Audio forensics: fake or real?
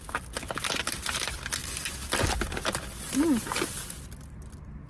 real